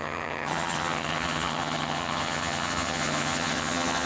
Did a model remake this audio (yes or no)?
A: yes